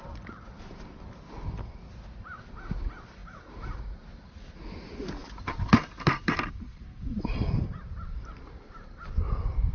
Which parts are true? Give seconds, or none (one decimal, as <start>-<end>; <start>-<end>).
0.0-3.2; 3.8-5.2